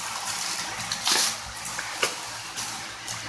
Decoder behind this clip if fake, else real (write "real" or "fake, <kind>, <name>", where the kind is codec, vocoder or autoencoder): real